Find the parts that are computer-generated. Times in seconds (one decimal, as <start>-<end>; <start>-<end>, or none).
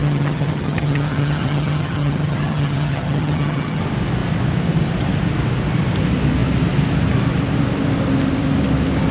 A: 0.0-3.8